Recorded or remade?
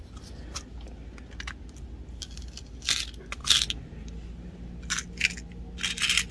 recorded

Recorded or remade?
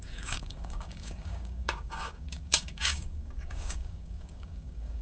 remade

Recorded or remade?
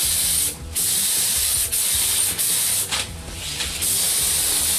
remade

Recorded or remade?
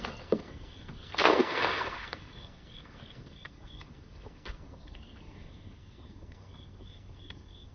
remade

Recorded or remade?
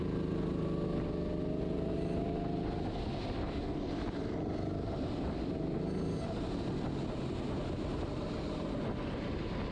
recorded